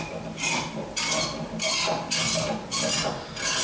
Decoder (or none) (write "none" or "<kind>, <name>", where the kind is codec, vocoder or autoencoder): none